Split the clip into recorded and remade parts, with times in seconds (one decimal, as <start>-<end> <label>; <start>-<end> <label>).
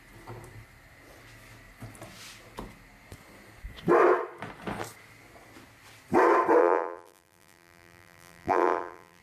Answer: 0.0-6.6 recorded; 6.6-9.2 remade